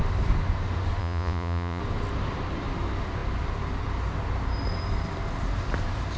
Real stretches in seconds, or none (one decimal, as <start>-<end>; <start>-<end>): 0.0-1.0; 1.8-6.2